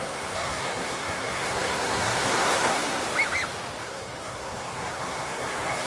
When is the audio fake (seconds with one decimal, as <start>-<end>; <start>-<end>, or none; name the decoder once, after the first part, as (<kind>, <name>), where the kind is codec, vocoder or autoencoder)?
0.0-3.0 (codec, SNAC); 3.8-5.9